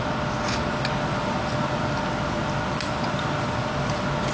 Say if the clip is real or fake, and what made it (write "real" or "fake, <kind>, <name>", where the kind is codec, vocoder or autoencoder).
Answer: real